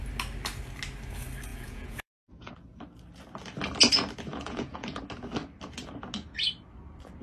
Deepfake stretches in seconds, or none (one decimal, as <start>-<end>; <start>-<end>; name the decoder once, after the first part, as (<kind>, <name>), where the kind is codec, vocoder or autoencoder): 1.5-2.5 (vocoder, Vocos); 4.3-5.0